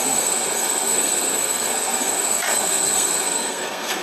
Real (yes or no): no